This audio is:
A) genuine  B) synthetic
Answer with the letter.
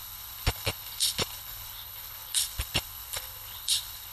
B